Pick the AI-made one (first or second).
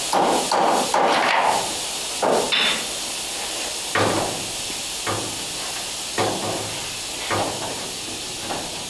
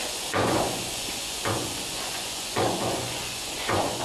second